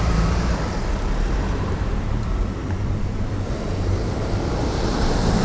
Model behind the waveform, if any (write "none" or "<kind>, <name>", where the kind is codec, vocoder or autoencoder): vocoder, BigVGAN v2